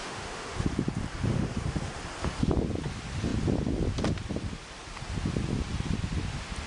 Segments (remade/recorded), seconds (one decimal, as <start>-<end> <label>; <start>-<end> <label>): 0.0-0.7 remade; 0.7-1.3 recorded; 1.3-2.0 remade; 2.0-6.7 recorded